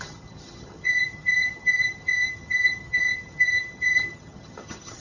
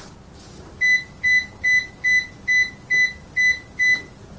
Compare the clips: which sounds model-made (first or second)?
first